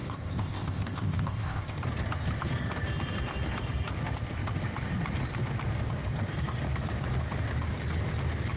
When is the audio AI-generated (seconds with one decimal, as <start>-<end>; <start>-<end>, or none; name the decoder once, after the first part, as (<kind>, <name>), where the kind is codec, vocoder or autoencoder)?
0.0-1.8 (codec, ZipCodec)